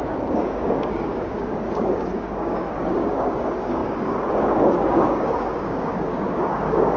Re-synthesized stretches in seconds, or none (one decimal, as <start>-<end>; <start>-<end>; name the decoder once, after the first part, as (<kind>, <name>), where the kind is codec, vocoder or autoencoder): 0.0-7.0 (codec, DAC)